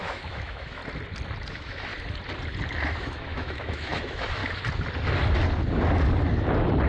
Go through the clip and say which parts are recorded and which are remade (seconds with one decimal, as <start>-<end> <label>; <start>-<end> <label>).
0.0-0.8 remade; 0.8-1.5 recorded; 1.5-1.9 remade; 1.9-3.0 recorded; 3.0-4.4 remade; 4.4-6.9 recorded